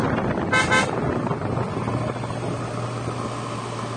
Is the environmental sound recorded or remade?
recorded